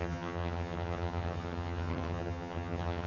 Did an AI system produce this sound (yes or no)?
yes